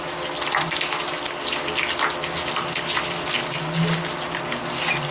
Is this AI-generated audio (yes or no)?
no